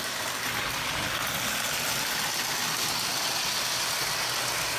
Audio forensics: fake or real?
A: real